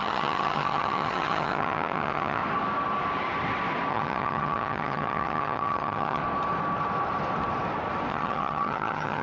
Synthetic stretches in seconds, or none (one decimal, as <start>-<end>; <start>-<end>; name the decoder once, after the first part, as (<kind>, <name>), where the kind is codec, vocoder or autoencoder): 0.0-2.4 (vocoder, HiFi-GAN); 3.9-6.2; 8.1-9.2